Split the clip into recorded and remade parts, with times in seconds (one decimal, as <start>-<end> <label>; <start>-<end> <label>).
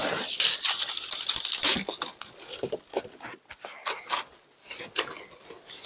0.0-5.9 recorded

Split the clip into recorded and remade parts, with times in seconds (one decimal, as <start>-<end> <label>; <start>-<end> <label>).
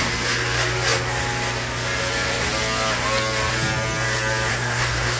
0.0-4.5 recorded; 4.5-5.2 remade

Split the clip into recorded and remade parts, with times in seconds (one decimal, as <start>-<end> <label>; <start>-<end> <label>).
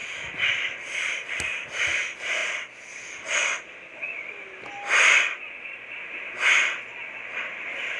0.0-8.0 recorded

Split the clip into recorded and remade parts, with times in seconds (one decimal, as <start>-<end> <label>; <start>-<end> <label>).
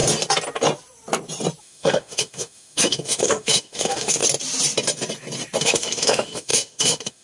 0.0-1.6 recorded; 1.6-4.2 remade; 4.2-5.6 recorded; 5.6-7.2 remade